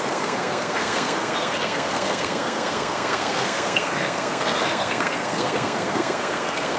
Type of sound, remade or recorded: remade